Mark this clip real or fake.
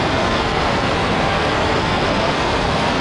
fake